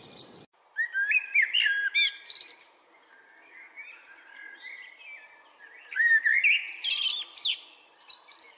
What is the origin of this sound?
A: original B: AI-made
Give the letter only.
A